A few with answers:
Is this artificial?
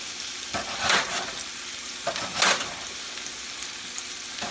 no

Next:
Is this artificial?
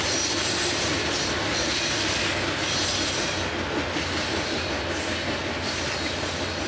no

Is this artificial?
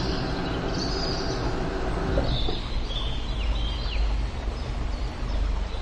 no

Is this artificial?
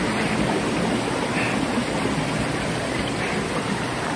no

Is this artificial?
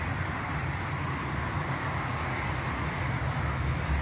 no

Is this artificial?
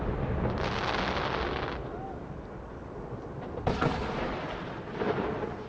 no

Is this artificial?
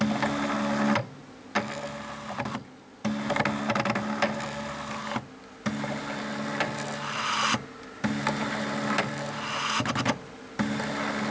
no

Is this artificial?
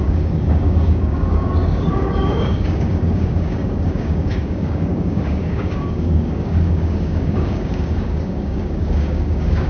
yes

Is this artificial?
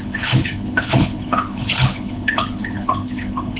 yes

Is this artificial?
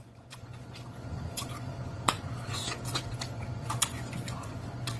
yes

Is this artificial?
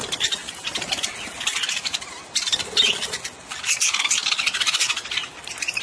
no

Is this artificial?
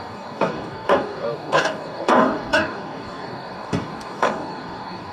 yes